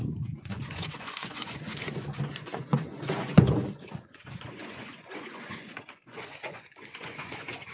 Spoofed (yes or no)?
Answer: yes